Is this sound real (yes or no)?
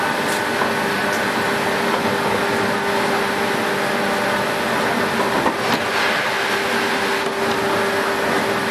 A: yes